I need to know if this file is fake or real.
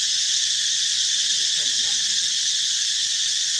real